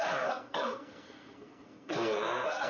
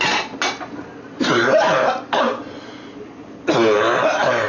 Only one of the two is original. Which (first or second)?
second